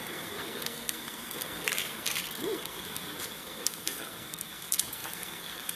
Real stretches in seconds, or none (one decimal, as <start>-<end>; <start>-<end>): none